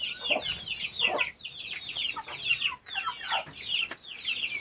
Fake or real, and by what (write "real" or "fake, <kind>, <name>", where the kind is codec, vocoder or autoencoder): real